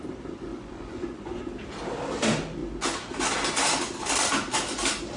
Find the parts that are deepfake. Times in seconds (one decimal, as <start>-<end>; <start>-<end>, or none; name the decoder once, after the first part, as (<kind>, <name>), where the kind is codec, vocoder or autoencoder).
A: 0.5-1.4 (vocoder, Vocos)